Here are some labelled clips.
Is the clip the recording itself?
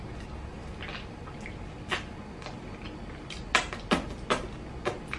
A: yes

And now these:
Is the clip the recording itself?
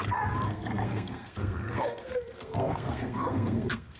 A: no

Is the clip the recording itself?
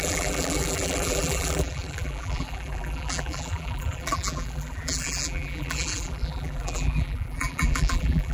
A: no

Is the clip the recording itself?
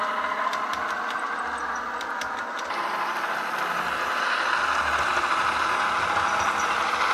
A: yes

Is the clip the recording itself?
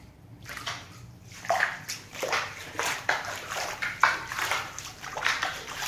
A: no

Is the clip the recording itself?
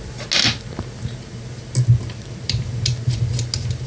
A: yes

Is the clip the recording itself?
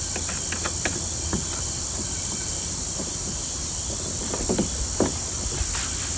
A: yes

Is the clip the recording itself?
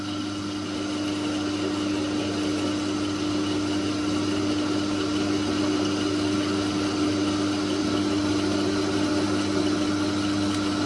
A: yes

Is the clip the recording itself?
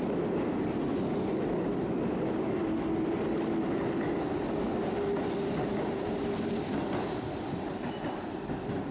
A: yes